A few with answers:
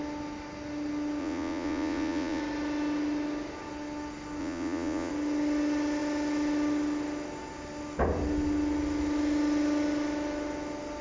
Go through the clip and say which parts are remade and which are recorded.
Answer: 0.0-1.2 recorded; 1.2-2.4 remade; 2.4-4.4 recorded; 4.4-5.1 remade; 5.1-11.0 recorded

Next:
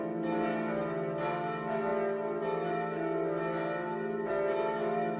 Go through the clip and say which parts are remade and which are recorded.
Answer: 0.0-5.2 recorded

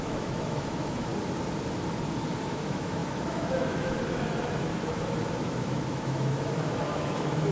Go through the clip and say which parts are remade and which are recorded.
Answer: 0.0-1.1 remade; 1.1-2.4 recorded; 2.4-7.5 remade

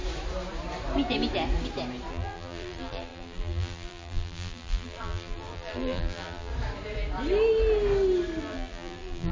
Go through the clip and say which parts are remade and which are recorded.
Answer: 0.0-2.1 recorded; 2.1-6.5 remade; 6.5-8.4 recorded; 8.4-9.3 remade

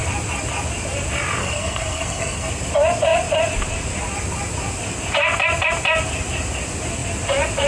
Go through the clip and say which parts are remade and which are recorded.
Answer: 0.0-1.4 recorded; 1.4-2.5 remade; 2.5-7.7 recorded

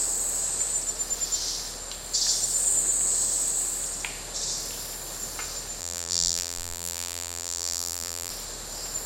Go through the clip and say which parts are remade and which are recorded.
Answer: 0.0-5.8 recorded; 5.8-8.3 remade; 8.3-9.1 recorded